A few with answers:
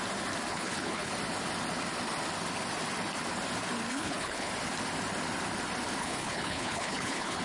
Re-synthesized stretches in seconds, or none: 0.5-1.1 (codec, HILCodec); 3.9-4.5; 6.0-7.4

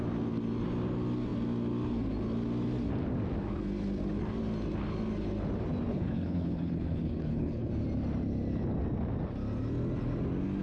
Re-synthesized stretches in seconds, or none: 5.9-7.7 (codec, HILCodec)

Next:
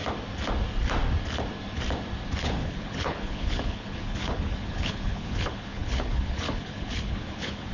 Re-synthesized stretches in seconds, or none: 2.4-7.7 (codec, HILCodec)

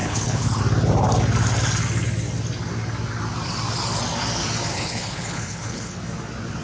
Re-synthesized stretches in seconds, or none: 0.0-0.6 (codec, HILCodec); 4.7-6.0